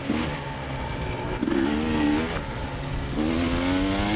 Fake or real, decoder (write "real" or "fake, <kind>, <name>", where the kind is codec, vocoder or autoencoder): real